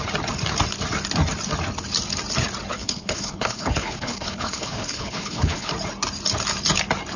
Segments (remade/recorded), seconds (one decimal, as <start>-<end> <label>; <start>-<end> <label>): 0.0-2.8 recorded; 2.8-5.7 remade; 5.7-7.2 recorded